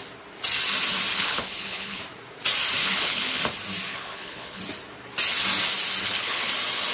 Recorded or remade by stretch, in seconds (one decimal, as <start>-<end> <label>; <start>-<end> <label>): 0.0-1.1 recorded; 1.1-2.0 remade; 2.0-2.8 recorded; 2.8-3.4 remade; 3.4-3.9 recorded; 3.9-4.6 remade; 4.6-6.0 recorded; 6.0-6.5 remade; 6.5-6.9 recorded